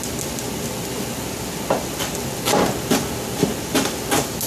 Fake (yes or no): no